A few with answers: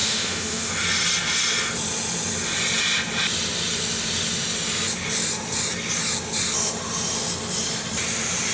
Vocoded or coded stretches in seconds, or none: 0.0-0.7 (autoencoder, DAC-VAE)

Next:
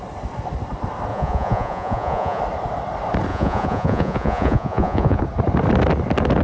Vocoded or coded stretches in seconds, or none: 1.1-2.4 (vocoder, Vocos); 3.3-5.2

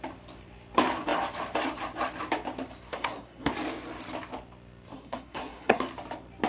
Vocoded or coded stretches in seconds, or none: 2.9-3.5 (codec, SNAC); 4.9-5.8

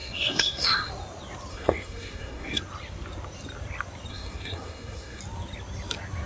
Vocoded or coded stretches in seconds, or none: 0.0-0.9 (codec, SNAC); 1.5-2.6; 4.1-5.2

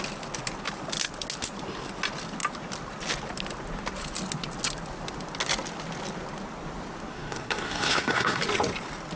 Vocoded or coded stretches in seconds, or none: 7.1-8.4 (codec, SNAC)

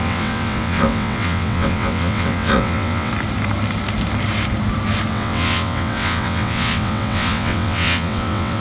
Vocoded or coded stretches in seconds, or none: 0.0-3.1 (vocoder, WaveNeXt); 5.1-8.6